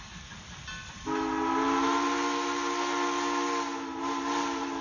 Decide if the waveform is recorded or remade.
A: recorded